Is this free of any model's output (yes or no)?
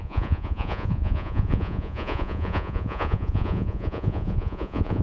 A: no